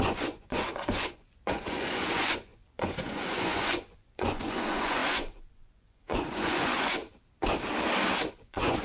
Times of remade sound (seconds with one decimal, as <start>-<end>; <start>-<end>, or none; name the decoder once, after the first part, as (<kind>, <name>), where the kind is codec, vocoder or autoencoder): 0.0-7.0 (vocoder, Vocos); 8.3-8.8